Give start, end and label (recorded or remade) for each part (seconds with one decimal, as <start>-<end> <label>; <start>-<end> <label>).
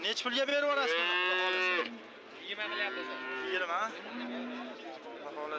0.0-5.6 recorded